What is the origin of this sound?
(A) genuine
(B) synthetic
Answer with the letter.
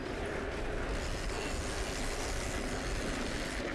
A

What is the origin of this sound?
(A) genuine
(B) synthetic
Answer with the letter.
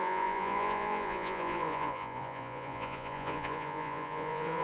B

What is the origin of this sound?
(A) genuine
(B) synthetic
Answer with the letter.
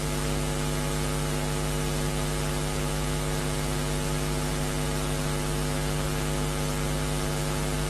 A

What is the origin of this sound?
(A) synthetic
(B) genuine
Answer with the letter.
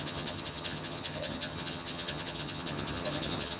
A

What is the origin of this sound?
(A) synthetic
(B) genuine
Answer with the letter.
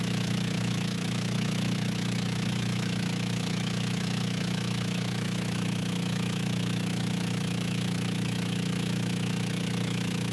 A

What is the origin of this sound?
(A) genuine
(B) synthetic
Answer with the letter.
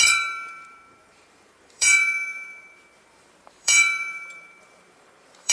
B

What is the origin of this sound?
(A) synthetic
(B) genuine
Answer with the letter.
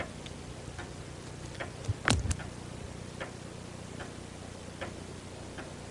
B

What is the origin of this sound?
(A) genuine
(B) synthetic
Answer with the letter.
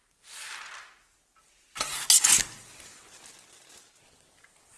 A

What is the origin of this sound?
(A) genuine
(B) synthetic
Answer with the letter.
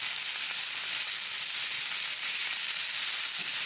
A